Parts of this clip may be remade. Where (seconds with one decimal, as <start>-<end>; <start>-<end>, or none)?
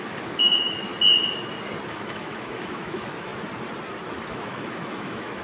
0.0-0.9; 1.9-3.3; 4.3-5.4